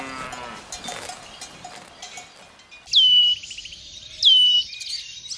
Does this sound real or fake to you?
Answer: real